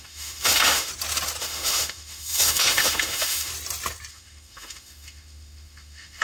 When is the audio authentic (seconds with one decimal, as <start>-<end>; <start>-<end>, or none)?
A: 0.9-1.4; 3.5-4.1